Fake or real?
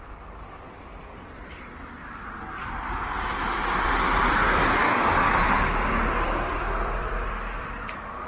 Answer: fake